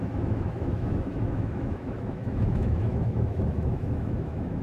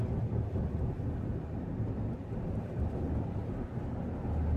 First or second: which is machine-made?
first